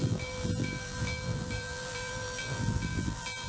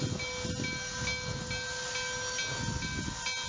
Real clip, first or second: second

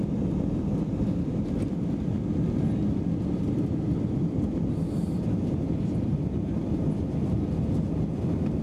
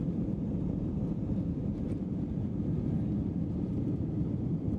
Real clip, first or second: first